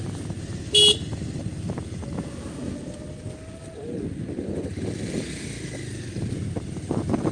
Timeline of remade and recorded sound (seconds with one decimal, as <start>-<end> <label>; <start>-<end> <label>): 0.0-7.3 recorded